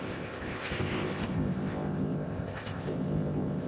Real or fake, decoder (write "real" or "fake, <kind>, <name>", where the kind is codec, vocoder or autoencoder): fake, codec, ZipCodec